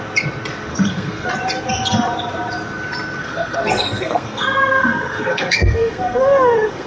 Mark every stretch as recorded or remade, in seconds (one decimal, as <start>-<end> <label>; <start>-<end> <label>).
0.0-0.7 recorded; 0.7-1.3 remade; 1.3-3.2 recorded; 3.2-6.9 remade